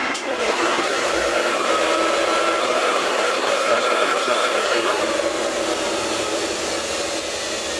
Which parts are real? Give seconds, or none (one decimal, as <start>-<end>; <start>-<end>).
1.7-2.6; 5.0-7.8